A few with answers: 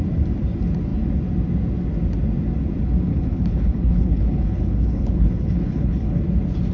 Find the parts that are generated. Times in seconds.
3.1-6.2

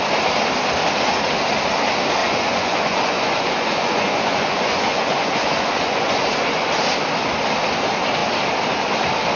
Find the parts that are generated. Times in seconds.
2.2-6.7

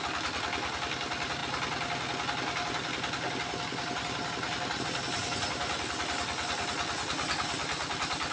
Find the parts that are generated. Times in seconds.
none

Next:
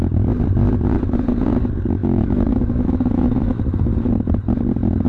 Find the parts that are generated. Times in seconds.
2.0-3.6

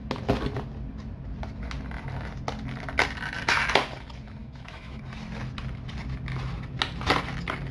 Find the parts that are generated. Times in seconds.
4.4-5.0

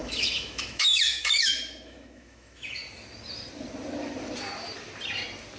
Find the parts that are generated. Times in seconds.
0.0-2.8

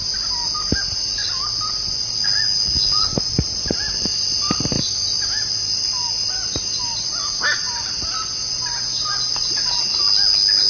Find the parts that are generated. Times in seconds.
none

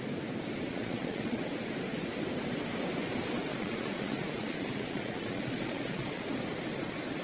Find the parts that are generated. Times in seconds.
0.7-1.4; 3.5-6.2